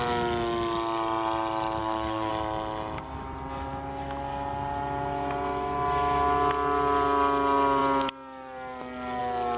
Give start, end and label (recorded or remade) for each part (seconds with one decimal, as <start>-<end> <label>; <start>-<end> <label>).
0.0-1.8 recorded; 1.8-2.3 remade; 2.3-9.6 recorded

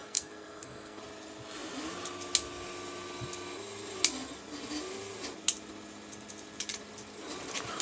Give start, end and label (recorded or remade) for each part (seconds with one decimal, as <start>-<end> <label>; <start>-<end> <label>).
0.0-1.0 remade; 1.0-7.8 recorded

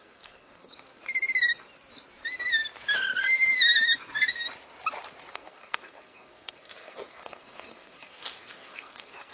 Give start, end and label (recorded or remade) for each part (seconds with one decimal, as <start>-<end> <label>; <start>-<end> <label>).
0.0-0.9 remade; 0.9-5.3 recorded; 5.3-9.3 remade

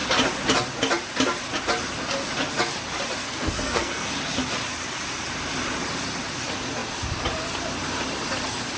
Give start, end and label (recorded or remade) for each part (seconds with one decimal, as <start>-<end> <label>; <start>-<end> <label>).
0.0-3.2 recorded; 3.2-4.1 remade; 4.1-8.8 recorded